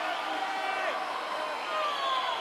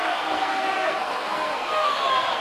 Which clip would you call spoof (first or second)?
second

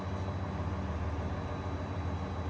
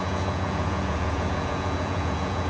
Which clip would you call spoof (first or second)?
second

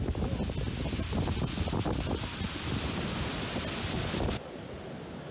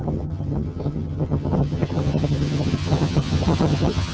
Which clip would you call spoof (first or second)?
second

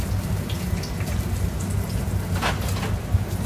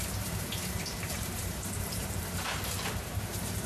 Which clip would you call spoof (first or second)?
second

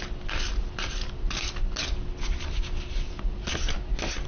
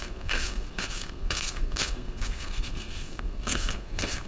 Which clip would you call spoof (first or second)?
second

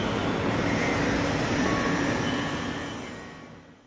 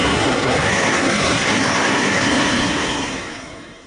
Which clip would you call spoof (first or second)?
second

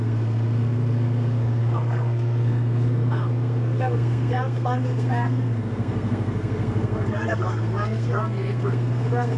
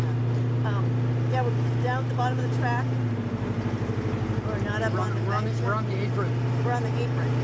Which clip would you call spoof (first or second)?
first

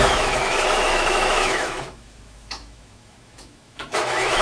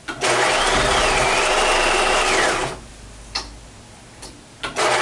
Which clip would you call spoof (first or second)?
first